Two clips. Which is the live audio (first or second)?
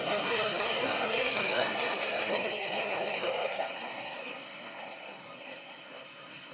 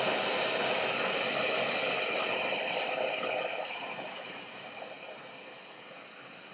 second